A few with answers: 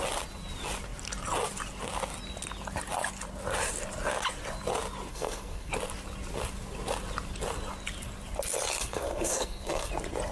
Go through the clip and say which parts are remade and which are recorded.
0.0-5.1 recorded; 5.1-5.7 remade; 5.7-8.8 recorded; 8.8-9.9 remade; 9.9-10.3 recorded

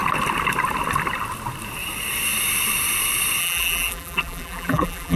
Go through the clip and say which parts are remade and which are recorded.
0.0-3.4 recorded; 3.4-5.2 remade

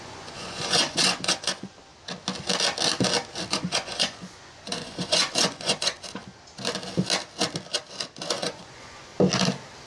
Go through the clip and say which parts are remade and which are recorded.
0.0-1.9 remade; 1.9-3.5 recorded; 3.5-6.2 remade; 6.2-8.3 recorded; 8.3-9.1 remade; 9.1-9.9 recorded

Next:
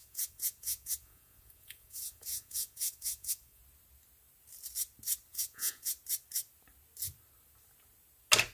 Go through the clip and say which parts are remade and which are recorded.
0.0-3.6 remade; 3.6-5.3 recorded; 5.3-5.9 remade; 5.9-8.5 recorded

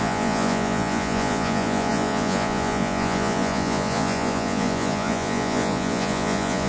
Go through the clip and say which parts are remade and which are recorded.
0.0-6.7 remade

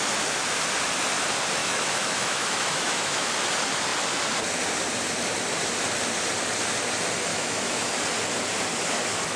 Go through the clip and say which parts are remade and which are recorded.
0.0-1.6 recorded; 1.6-3.3 remade; 3.3-7.3 recorded; 7.3-7.9 remade; 7.9-9.4 recorded

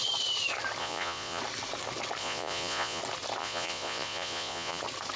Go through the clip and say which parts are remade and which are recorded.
0.0-0.8 recorded; 0.8-1.4 remade; 1.4-2.2 recorded; 2.2-3.0 remade; 3.0-3.4 recorded; 3.4-4.8 remade; 4.8-5.2 recorded

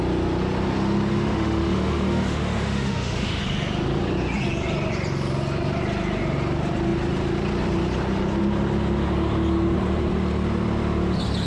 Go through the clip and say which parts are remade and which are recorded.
0.0-1.1 recorded; 1.1-3.4 remade; 3.4-11.5 recorded